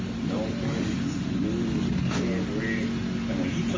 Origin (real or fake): real